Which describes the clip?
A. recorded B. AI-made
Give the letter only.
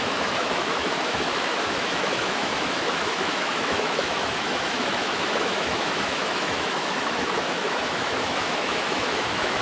B